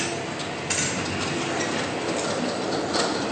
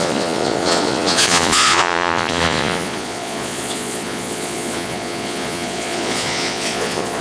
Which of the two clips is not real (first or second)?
second